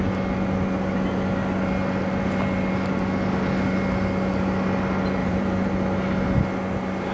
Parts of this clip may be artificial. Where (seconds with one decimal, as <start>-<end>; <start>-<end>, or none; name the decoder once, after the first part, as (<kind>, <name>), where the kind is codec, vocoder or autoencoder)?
5.2-5.7 (vocoder, BigVGAN v2)